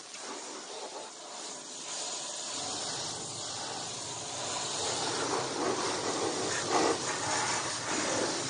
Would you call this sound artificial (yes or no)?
no